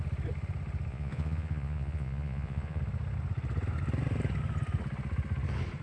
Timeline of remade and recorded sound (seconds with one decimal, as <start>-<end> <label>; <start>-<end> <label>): 0.0-0.9 recorded; 0.9-2.8 remade; 2.8-5.8 recorded